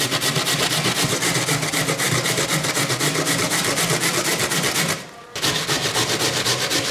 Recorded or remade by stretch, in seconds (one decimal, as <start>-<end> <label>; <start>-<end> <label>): 0.0-6.9 recorded